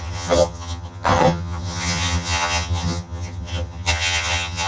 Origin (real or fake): fake